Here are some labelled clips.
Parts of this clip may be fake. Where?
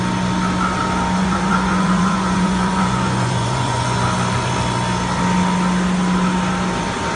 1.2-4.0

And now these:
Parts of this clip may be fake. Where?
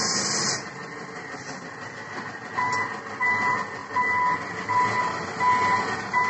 none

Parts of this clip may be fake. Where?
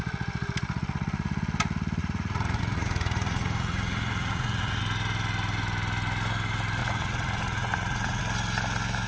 2.0-4.8; 6.8-8.2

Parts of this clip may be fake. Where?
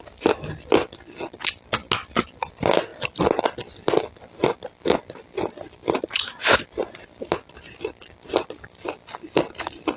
none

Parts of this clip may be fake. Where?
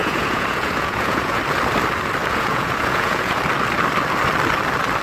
0.0-1.4; 2.2-3.4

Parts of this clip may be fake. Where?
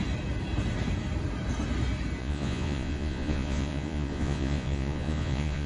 2.2-5.7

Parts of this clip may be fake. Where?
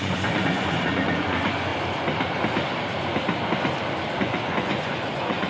0.0-1.7; 4.2-5.5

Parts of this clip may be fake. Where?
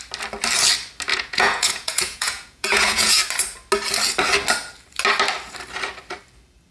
1.1-3.2